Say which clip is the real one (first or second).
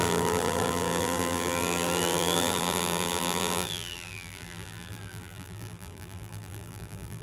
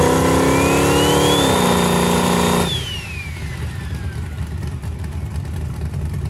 second